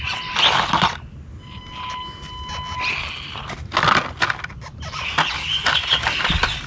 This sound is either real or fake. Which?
real